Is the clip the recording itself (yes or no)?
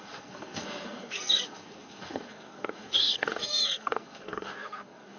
no